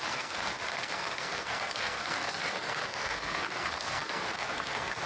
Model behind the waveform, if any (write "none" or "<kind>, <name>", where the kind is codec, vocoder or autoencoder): codec, SNAC